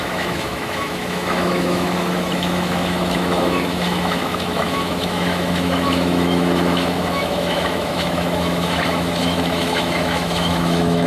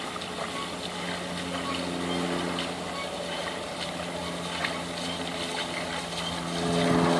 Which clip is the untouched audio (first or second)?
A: second